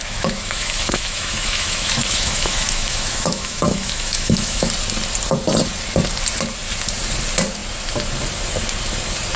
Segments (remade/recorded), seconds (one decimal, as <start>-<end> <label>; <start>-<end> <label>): 0.0-4.7 remade; 4.7-9.4 recorded